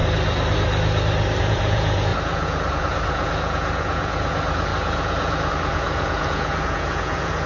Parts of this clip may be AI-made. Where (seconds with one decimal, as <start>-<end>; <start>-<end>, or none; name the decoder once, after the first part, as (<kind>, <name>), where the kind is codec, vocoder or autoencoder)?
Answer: 1.4-7.5 (vocoder, Vocos)